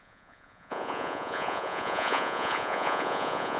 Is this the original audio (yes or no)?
no